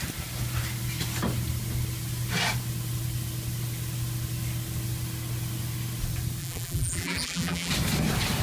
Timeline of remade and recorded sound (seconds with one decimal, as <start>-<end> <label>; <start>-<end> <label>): 0.0-6.4 recorded; 6.4-7.7 remade; 7.7-8.4 recorded